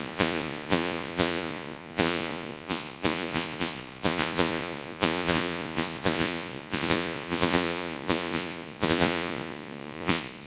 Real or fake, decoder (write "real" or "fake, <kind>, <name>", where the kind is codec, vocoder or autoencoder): fake, vocoder, Vocos